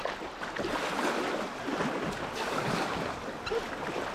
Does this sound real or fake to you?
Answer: real